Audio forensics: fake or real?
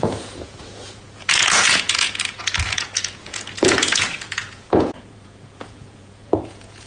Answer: fake